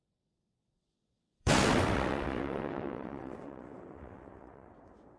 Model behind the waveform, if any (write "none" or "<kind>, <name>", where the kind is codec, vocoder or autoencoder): vocoder, WaveNeXt